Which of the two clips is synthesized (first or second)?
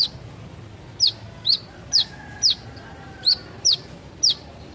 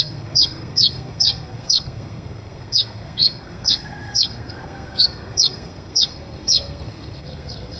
second